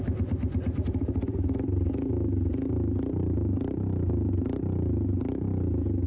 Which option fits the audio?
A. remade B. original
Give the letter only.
B